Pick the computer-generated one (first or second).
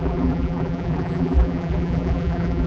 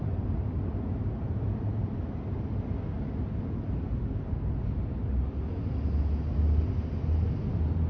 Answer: first